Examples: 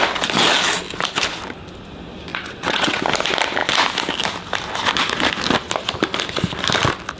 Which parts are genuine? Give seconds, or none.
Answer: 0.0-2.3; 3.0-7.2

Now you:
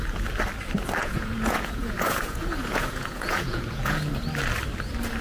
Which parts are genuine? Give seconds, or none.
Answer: 0.0-1.0; 4.1-5.2

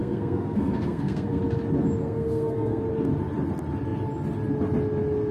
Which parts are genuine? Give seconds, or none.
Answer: 1.4-2.0; 2.8-5.3

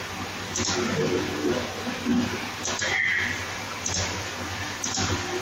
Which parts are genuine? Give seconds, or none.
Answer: 0.0-5.4

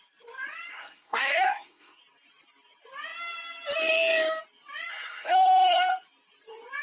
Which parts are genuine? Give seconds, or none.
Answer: 0.0-0.7; 2.0-4.9; 5.9-6.8

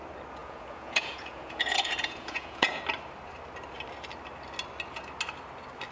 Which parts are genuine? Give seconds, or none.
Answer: 0.0-0.4; 2.8-5.9

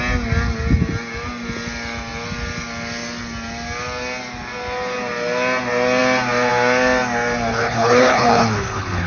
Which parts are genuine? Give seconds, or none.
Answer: 0.0-7.5

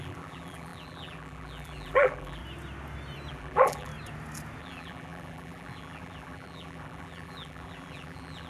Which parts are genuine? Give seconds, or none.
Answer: 2.4-3.3; 3.9-4.6